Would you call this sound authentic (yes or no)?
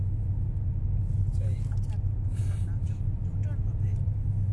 yes